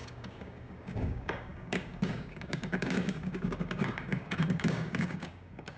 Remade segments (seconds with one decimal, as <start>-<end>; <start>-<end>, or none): 0.0-5.8